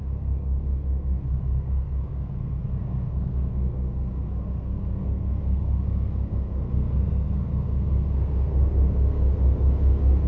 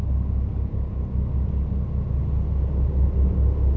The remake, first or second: first